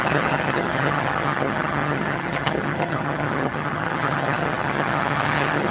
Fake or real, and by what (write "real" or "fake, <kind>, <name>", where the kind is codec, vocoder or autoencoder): fake, vocoder, HiFi-GAN